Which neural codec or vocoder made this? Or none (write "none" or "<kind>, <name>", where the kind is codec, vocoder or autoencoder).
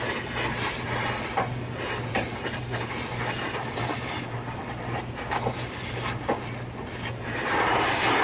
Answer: vocoder, BigVGAN v2